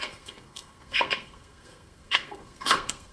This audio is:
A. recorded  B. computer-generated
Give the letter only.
B